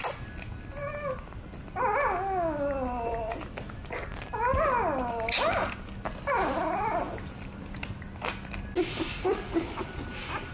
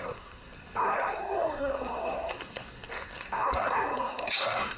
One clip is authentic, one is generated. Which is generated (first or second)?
second